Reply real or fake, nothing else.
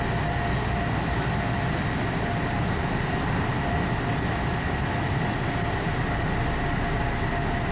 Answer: real